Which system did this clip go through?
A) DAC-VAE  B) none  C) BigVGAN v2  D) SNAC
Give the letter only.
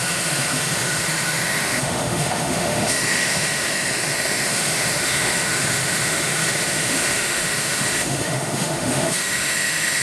A